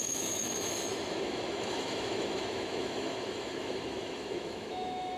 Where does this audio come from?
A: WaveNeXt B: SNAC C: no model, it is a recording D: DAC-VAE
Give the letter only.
D